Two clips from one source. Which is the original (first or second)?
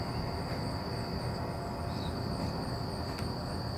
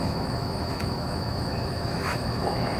first